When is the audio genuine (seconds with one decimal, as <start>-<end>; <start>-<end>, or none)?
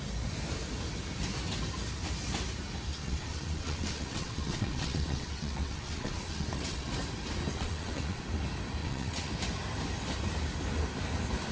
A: 0.0-2.9; 6.9-7.5; 8.2-8.8; 9.3-11.5